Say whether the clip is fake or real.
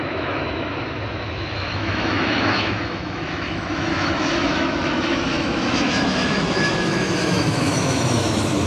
fake